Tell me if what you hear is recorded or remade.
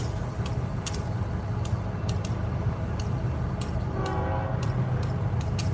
recorded